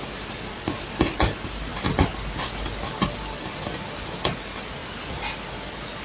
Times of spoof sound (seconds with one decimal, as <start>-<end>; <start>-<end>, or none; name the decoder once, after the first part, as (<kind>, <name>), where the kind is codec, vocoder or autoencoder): none